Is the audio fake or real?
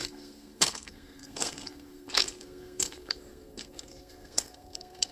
fake